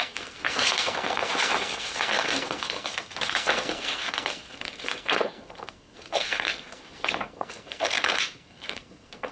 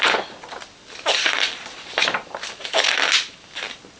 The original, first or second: second